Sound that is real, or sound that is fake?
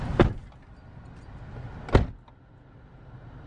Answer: real